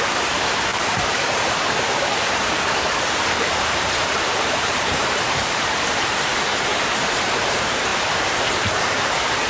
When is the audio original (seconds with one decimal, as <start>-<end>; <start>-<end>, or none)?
6.3-6.9